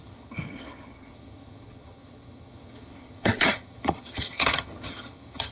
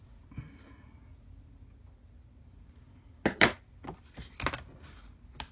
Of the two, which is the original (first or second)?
second